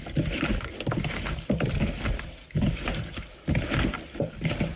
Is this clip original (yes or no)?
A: yes